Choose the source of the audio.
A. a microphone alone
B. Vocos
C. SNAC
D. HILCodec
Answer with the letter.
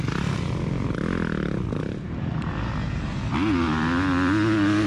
A